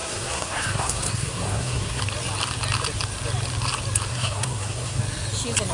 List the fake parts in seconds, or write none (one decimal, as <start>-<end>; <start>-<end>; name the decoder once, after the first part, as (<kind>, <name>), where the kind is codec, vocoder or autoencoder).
0.0-2.0 (codec, SNAC); 4.1-5.0

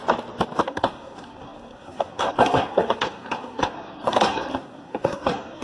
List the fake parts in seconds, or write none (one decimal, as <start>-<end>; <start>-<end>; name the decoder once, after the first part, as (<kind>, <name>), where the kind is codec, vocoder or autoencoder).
0.6-5.6 (codec, SNAC)